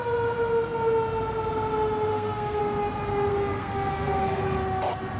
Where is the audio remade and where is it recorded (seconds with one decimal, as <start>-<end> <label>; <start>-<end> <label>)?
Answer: 0.0-2.1 recorded; 2.1-2.6 remade; 2.6-3.3 recorded; 3.3-4.4 remade; 4.4-5.2 recorded